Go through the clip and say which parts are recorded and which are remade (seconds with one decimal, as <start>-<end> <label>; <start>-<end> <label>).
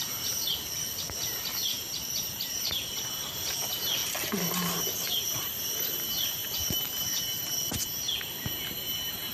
0.0-1.7 recorded; 1.7-3.0 remade; 3.0-6.4 recorded; 6.4-7.2 remade; 7.2-9.3 recorded